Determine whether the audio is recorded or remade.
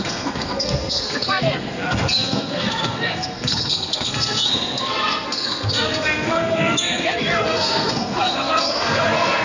remade